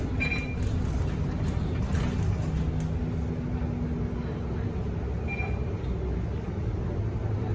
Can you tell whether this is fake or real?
real